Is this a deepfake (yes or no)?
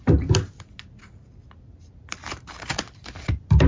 no